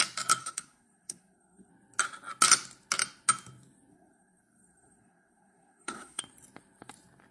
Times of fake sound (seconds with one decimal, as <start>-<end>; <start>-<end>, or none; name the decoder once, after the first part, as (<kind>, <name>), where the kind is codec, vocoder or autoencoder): 0.4-1.7 (codec, SNAC); 3.9-6.2